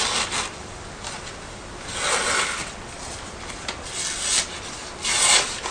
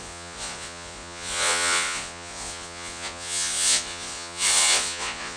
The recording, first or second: first